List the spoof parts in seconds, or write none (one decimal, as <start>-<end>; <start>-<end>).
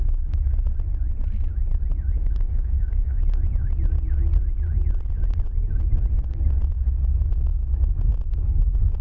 2.2-3.2